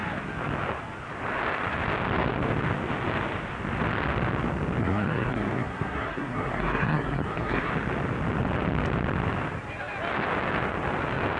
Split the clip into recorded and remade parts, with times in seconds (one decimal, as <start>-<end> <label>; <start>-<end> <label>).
0.0-4.8 recorded; 4.8-7.7 remade; 7.7-11.4 recorded